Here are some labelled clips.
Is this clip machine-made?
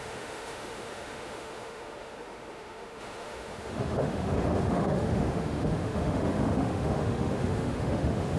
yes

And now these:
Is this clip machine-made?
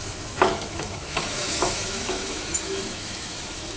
yes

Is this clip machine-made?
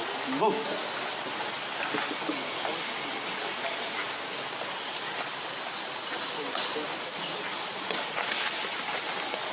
no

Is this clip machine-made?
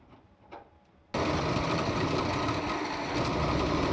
no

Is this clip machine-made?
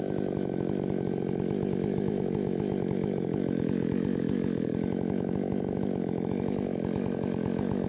yes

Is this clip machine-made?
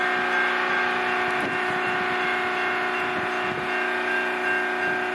no